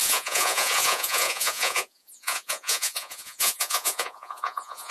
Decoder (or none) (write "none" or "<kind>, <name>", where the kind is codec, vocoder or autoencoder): vocoder, Vocos